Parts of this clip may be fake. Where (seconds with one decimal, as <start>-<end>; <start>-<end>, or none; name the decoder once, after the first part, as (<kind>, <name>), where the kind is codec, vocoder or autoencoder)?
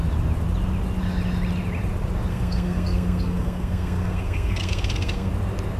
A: 2.3-5.3 (codec, SNAC)